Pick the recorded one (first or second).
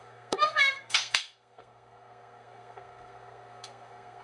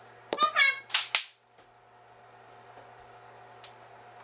second